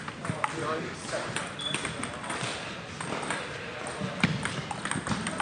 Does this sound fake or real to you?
real